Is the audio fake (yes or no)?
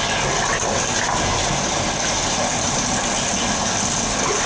no